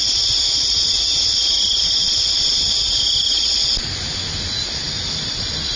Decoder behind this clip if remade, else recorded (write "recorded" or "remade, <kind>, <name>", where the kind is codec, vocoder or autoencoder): recorded